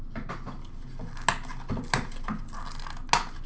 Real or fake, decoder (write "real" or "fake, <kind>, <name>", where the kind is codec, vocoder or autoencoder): real